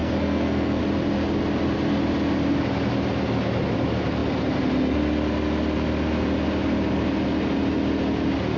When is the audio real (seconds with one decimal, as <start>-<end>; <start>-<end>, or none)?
0.8-8.6

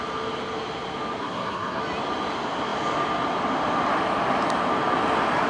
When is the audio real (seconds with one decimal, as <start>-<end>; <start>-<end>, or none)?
0.0-1.2; 1.8-5.5

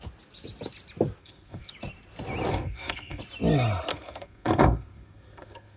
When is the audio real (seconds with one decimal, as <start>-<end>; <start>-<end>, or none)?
0.0-1.2; 1.7-2.5; 3.2-3.9

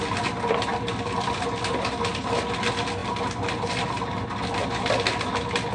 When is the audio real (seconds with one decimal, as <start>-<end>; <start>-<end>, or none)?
0.0-5.7